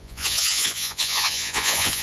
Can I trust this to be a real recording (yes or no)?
no